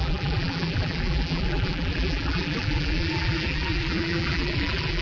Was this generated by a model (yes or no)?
yes